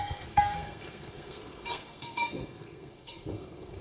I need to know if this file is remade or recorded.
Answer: remade